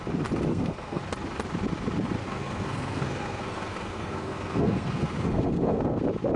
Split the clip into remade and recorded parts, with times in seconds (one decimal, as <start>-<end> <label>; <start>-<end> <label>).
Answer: 0.0-0.5 recorded; 0.5-1.0 remade; 1.0-2.2 recorded; 2.2-6.0 remade; 6.0-6.4 recorded